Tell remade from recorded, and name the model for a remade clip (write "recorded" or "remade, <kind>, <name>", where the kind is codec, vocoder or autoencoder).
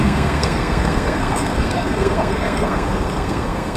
remade, codec, SNAC